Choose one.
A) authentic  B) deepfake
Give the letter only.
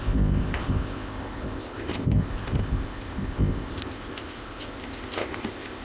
B